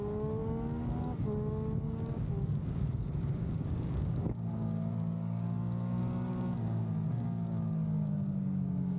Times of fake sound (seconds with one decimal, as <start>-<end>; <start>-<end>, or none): 0.0-9.0